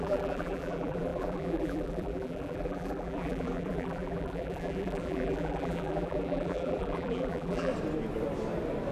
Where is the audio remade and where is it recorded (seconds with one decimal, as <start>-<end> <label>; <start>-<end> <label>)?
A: 0.0-7.7 remade; 7.7-8.9 recorded